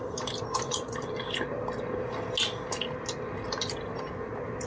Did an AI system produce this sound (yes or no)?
no